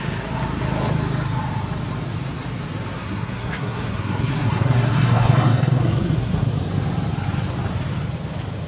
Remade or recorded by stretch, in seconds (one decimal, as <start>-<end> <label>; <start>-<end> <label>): 0.0-3.0 recorded; 3.0-6.5 remade; 6.5-8.7 recorded